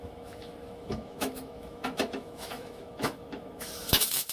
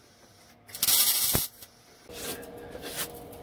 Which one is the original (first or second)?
second